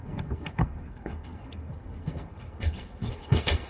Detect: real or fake fake